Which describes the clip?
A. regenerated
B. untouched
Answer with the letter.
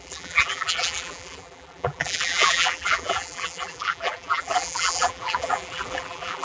A